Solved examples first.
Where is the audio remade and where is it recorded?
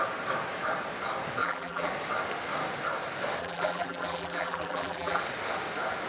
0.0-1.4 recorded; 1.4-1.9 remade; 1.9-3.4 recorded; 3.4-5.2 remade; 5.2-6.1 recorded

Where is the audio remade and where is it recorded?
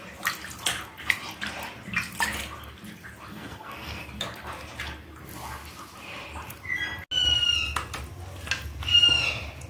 0.0-3.3 recorded; 3.3-4.0 remade; 4.0-9.7 recorded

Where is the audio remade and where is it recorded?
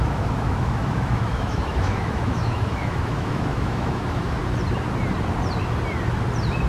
0.0-4.4 remade; 4.4-6.7 recorded